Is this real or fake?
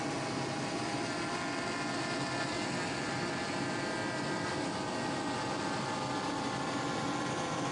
real